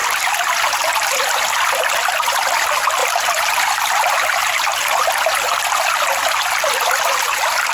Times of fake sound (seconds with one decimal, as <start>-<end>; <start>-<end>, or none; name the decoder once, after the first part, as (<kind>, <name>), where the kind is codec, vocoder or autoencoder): none